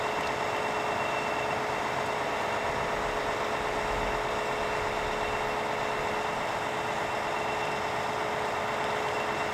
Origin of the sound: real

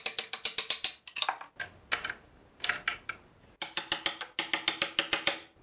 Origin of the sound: real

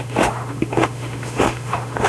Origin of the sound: fake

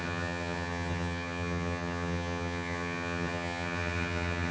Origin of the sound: fake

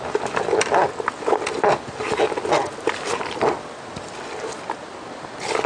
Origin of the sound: real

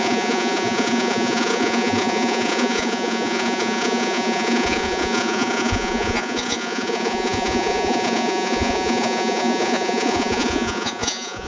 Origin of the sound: fake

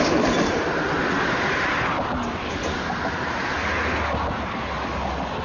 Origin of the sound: real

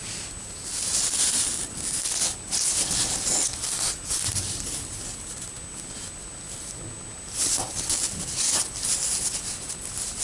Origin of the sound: real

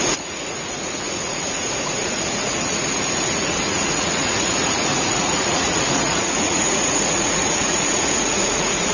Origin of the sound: fake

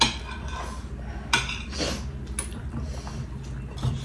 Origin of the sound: real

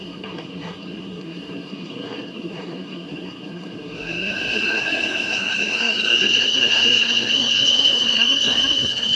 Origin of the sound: fake